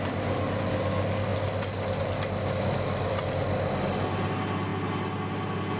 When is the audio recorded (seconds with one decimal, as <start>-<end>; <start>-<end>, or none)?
0.0-5.8